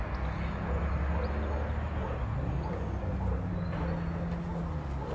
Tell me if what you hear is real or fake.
real